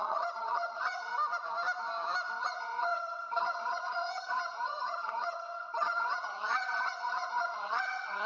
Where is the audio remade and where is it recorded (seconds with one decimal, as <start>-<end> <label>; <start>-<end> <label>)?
0.0-1.1 remade; 1.1-2.4 recorded; 2.4-8.3 remade